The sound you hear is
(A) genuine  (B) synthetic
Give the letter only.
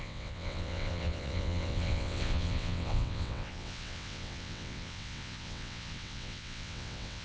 B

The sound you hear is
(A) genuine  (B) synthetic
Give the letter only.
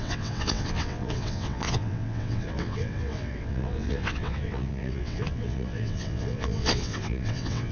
B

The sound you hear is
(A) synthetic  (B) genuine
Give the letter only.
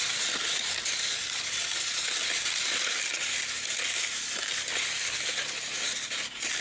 B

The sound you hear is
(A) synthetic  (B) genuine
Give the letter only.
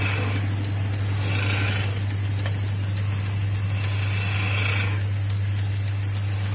B